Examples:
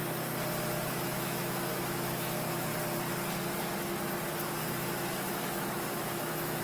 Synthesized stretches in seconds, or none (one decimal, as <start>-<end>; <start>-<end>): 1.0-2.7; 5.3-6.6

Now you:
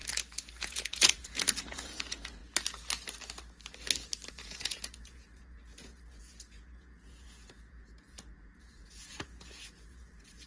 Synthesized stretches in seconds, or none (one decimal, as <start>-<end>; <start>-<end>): 0.6-2.4; 4.3-10.5

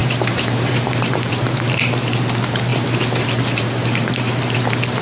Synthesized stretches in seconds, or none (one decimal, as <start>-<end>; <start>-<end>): 0.0-1.5; 2.7-4.4

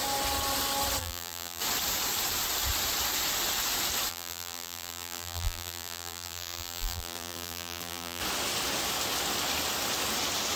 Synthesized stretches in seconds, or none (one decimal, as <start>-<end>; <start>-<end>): 1.0-1.6; 4.1-8.2